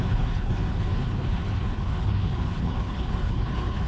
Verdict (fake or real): fake